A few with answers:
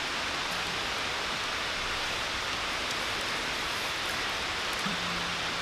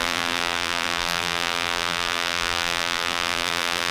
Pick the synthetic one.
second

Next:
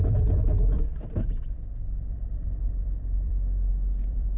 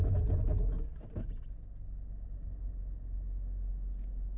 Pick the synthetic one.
first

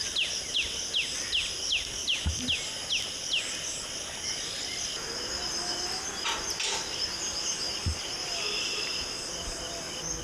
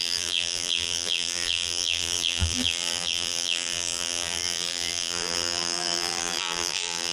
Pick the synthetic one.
second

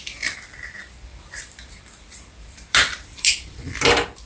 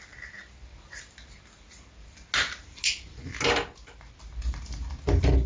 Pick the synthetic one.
first